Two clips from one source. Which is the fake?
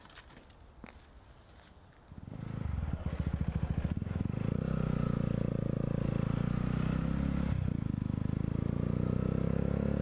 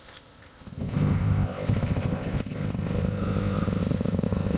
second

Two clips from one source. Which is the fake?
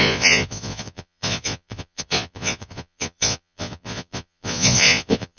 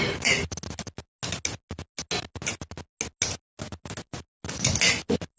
first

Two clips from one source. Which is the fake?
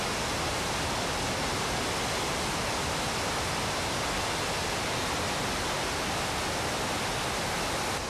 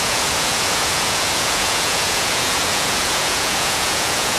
second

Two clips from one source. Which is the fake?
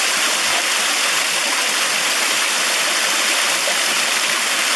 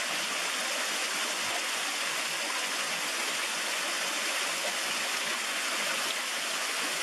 second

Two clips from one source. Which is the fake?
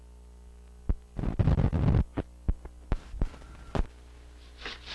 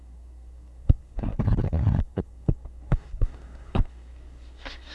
second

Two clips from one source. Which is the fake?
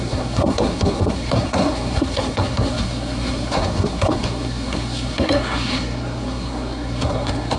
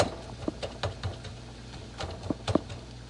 first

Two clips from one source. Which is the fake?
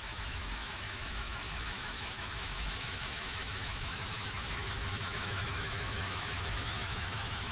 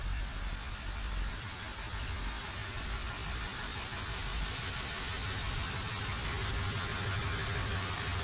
first